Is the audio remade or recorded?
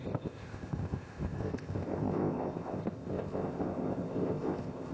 remade